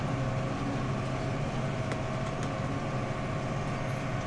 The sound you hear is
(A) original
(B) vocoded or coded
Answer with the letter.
A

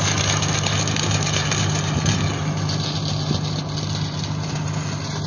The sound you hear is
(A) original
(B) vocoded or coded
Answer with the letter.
A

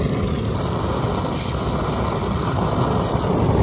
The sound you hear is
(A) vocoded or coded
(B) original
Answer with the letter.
B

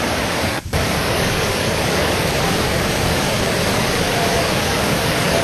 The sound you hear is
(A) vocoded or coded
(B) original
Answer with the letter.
A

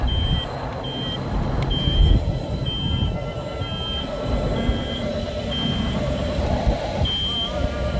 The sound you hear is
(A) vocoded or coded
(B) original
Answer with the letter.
B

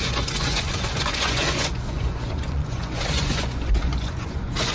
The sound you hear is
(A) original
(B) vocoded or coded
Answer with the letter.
B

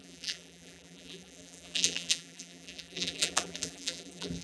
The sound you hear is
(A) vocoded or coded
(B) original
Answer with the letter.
A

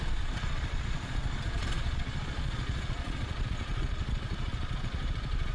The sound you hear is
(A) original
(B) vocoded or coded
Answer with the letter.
B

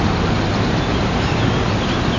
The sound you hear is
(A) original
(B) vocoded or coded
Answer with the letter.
A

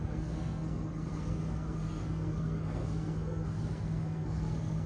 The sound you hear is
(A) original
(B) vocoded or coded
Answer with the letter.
B